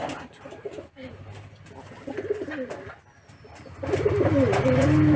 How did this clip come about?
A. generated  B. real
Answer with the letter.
B